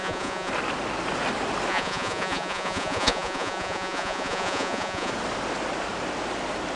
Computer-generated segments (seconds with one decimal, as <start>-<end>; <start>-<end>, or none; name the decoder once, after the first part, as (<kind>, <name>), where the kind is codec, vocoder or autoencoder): 0.0-0.5 (vocoder, Vocos); 1.7-5.1